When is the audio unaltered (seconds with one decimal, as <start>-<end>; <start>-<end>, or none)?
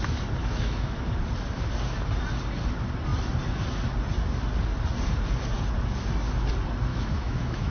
0.0-0.4; 1.0-6.9